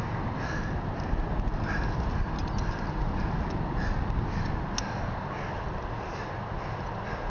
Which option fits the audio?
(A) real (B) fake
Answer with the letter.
A